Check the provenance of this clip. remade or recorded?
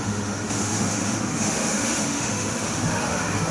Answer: remade